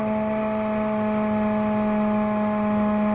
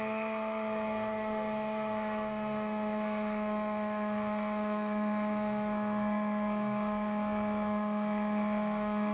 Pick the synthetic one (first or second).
second